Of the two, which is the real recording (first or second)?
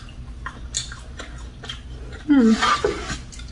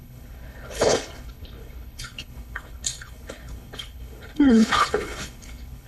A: first